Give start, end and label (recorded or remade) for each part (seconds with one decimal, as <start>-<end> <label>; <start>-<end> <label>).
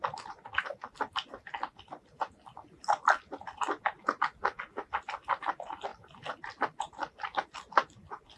0.0-8.4 recorded